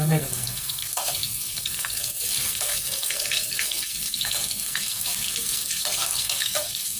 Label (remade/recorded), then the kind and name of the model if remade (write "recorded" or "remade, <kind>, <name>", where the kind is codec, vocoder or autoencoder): remade, codec, SNAC